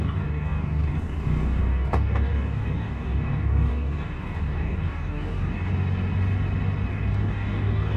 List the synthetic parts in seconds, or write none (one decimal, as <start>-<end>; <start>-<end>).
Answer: 0.0-5.7; 6.9-8.0